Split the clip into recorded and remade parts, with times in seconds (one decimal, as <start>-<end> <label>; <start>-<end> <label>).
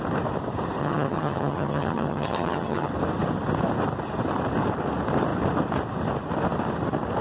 0.0-0.8 recorded; 0.8-2.9 remade; 2.9-7.2 recorded